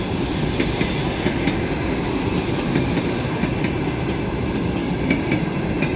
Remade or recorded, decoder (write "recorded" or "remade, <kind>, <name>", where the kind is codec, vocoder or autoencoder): recorded